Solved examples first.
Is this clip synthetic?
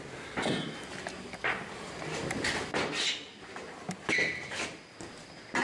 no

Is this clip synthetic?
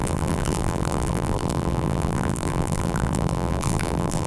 yes